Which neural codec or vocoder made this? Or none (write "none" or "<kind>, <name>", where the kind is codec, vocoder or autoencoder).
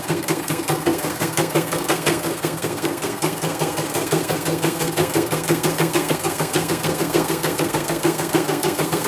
codec, SNAC